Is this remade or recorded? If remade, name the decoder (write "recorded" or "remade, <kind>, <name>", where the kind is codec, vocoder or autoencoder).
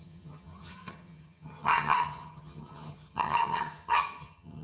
remade, vocoder, HiFi-GAN